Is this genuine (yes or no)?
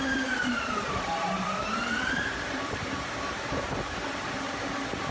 no